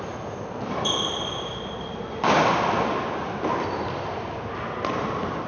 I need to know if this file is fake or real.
real